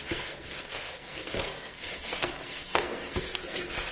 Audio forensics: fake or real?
fake